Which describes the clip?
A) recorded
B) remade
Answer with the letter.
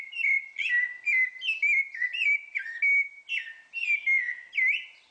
A